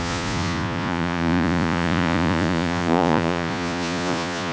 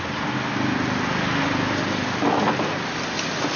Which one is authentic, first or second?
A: second